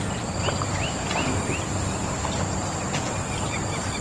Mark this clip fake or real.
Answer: real